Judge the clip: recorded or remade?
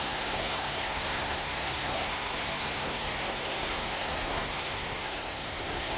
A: remade